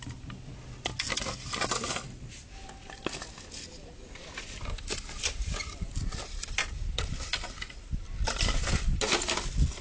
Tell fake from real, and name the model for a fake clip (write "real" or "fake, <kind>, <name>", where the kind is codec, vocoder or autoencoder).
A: real